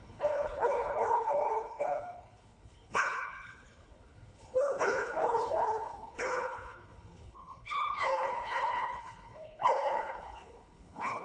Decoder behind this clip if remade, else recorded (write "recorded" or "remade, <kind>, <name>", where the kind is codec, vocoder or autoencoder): remade, codec, HILCodec